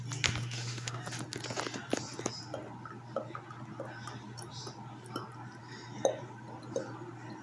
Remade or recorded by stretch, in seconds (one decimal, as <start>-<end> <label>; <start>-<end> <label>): 0.0-0.4 recorded; 0.4-1.0 remade; 1.0-7.4 recorded